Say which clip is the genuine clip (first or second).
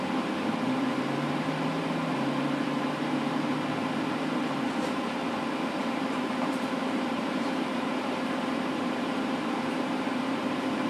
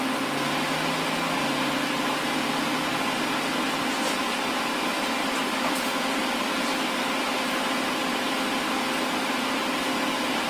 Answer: second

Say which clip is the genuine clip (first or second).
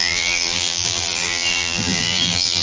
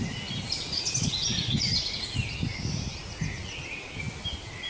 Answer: second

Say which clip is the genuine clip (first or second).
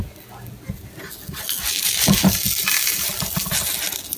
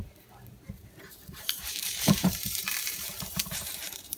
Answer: first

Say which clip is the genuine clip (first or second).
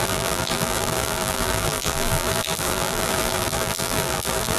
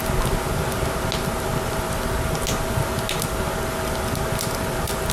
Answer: second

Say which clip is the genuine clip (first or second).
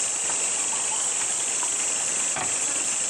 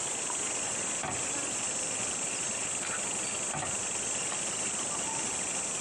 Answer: second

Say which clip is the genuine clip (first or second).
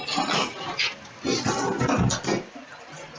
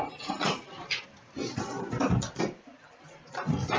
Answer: first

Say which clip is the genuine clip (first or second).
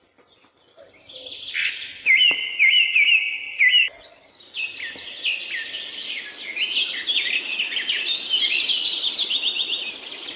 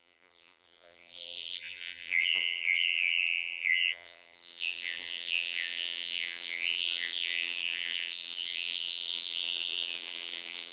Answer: first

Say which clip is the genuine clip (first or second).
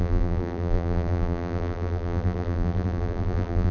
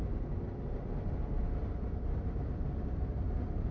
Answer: second